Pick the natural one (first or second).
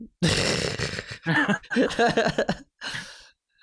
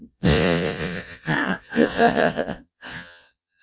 first